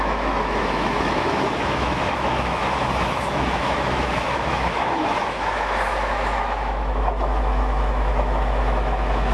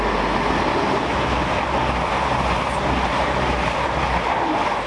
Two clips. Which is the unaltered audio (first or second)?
second